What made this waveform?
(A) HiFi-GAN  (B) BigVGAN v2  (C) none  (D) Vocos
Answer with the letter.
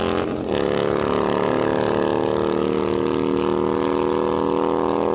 C